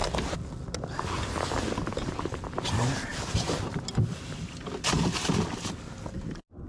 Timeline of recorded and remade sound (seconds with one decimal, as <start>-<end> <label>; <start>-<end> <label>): 0.0-6.7 recorded